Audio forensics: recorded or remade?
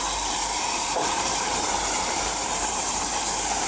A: remade